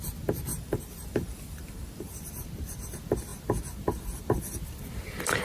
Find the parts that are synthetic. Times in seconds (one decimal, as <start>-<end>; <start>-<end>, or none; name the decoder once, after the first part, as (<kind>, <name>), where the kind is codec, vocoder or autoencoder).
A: 0.5-2.3 (vocoder, BigVGAN v2)